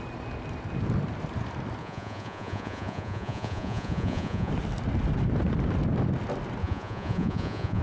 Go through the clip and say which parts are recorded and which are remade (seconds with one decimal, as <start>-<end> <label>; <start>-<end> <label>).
0.0-1.8 recorded; 1.8-4.5 remade; 4.5-6.6 recorded; 6.6-7.8 remade